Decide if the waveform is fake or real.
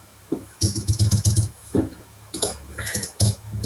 fake